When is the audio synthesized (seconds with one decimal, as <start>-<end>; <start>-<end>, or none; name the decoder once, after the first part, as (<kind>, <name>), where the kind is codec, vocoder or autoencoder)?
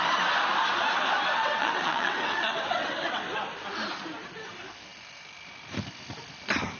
1.4-3.2 (vocoder, WaveNeXt)